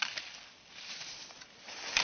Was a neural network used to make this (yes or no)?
no